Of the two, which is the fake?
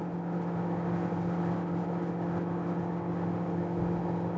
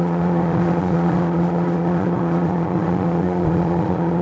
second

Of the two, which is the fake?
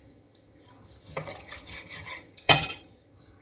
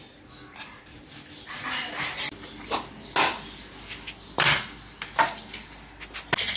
first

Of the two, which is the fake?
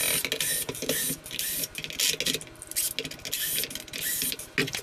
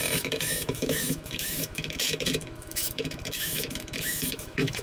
second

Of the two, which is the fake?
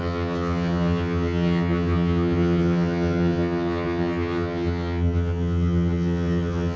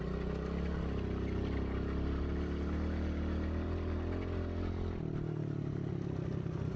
first